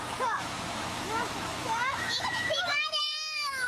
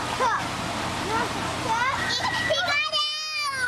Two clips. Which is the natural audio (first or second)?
second